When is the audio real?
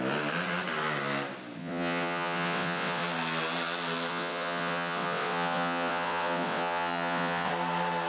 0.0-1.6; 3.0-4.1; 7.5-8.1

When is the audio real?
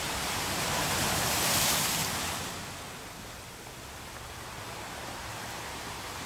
2.0-4.8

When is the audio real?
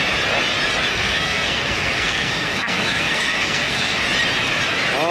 0.0-0.9; 4.0-5.1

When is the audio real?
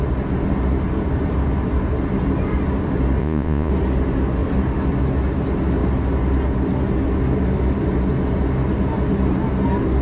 0.0-3.2; 3.7-10.0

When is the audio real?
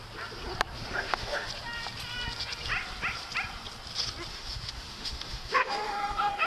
0.0-0.8; 1.5-4.3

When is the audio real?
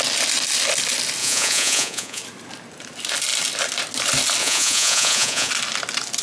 0.0-1.2; 2.2-4.4; 5.5-6.2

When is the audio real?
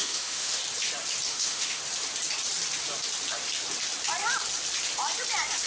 0.6-1.3; 1.8-5.7